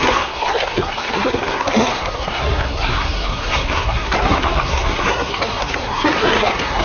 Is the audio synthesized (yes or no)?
yes